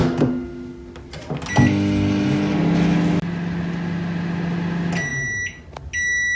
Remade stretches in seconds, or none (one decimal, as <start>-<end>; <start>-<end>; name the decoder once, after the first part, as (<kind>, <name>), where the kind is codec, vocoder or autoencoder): none